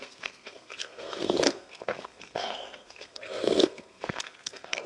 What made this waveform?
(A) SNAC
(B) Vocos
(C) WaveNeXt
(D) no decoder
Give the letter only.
A